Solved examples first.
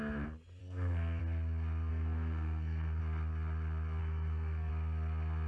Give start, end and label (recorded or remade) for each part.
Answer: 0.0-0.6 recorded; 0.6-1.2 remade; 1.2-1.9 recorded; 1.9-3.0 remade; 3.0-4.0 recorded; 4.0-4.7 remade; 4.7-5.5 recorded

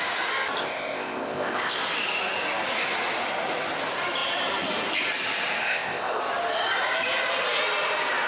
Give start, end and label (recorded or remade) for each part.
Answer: 0.0-0.6 recorded; 0.6-1.8 remade; 1.8-5.6 recorded; 5.6-6.2 remade; 6.2-8.3 recorded

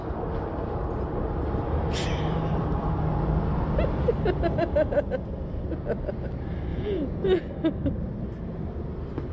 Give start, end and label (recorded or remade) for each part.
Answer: 0.0-6.7 recorded; 6.7-7.4 remade; 7.4-9.3 recorded